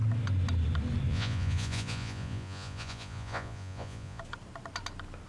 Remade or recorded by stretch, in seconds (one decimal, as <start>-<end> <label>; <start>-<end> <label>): 0.0-1.1 recorded; 1.1-4.2 remade; 4.2-5.3 recorded